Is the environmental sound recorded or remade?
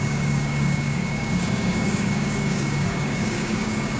remade